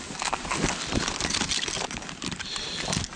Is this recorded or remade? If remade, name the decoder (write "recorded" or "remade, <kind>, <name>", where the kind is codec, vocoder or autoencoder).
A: recorded